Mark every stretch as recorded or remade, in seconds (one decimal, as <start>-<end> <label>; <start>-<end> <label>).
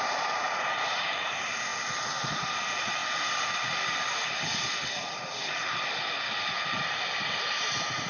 0.0-1.7 remade; 1.7-2.5 recorded; 2.5-3.0 remade; 3.0-7.3 recorded; 7.3-8.1 remade